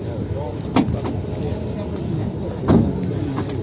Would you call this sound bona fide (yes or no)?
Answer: yes